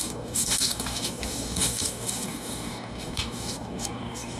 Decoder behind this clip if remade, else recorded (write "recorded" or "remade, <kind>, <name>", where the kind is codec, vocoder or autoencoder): remade, codec, DAC